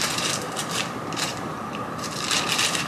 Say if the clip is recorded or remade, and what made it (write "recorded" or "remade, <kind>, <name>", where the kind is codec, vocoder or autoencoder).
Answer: remade, vocoder, BigVGAN v2